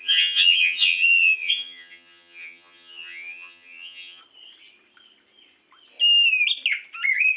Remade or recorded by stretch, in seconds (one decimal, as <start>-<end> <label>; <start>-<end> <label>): 0.0-4.2 remade; 4.2-7.4 recorded